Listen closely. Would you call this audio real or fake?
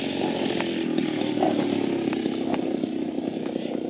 real